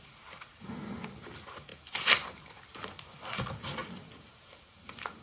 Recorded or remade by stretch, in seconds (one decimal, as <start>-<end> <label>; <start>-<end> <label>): 0.0-1.7 recorded; 1.7-2.9 remade; 2.9-3.8 recorded; 3.8-4.8 remade; 4.8-5.2 recorded